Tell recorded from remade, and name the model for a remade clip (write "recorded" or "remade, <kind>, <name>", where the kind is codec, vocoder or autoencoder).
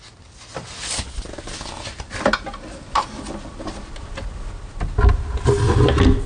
recorded